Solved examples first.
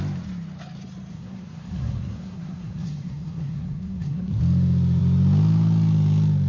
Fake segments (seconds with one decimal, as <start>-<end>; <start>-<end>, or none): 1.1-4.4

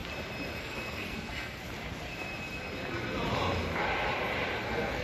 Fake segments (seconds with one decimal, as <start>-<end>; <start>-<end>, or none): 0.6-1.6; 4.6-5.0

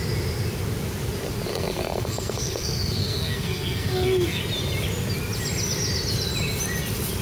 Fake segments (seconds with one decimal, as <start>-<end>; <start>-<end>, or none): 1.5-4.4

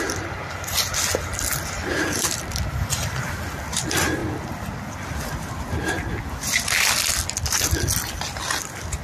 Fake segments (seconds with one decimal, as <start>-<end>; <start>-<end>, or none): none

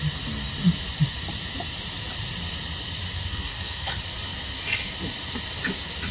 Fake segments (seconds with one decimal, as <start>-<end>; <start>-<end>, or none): 3.3-3.9

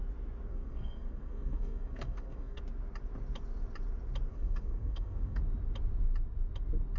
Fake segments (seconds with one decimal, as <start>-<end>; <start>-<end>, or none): 0.5-2.6; 4.3-5.4